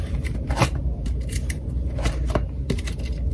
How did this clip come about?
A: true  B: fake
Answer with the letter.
B